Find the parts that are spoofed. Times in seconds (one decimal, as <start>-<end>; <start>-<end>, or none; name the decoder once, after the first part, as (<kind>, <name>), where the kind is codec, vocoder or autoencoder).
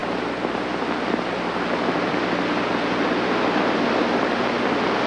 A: none